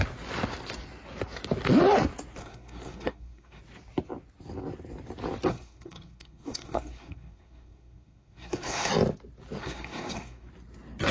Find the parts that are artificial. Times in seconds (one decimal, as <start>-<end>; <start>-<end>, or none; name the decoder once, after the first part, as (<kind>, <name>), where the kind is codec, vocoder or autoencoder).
2.4-3.6 (codec, SNAC); 5.5-8.9; 9.6-10.5